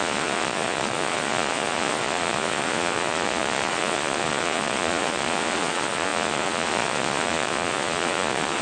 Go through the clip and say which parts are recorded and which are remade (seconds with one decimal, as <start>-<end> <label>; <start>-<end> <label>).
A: 0.0-8.6 remade